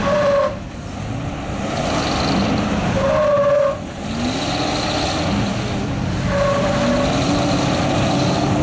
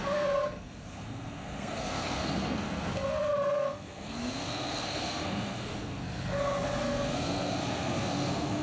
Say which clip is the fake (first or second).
second